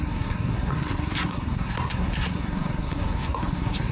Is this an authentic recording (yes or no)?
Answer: no